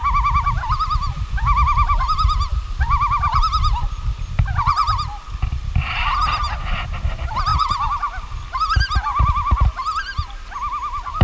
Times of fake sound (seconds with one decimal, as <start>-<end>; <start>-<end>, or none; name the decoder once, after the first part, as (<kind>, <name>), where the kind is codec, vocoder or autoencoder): 7.5-8.6 (vocoder, BigVGAN v2); 9.1-10.5